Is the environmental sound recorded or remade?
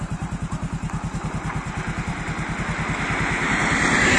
recorded